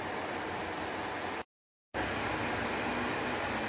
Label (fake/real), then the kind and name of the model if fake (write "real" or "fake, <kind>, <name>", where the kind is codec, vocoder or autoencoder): real